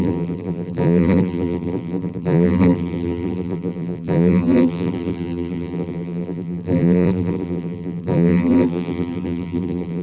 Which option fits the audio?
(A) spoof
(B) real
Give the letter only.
A